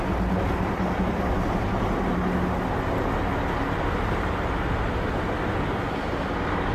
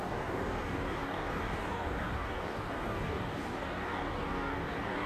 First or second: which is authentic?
first